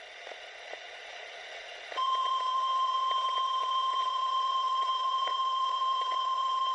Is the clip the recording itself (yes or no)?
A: no